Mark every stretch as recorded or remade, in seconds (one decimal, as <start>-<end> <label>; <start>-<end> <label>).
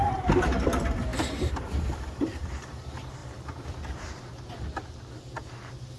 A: 0.0-1.1 recorded; 1.1-1.8 remade; 1.8-6.0 recorded